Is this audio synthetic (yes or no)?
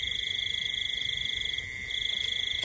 no